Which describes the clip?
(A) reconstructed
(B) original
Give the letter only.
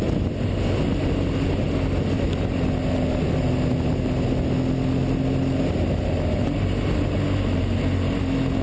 B